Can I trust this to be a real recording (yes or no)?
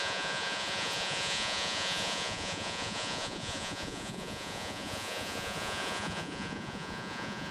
no